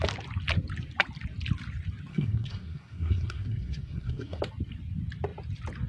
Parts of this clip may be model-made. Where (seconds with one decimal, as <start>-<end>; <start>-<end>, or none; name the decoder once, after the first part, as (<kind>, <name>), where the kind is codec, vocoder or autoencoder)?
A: 2.1-4.4 (codec, SNAC)